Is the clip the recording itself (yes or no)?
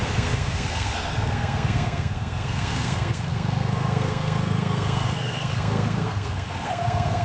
no